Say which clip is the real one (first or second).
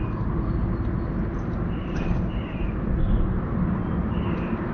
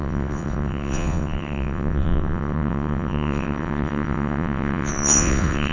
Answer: first